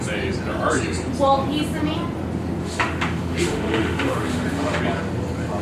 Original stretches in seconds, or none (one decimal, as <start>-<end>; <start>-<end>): 0.0-2.6; 4.8-5.6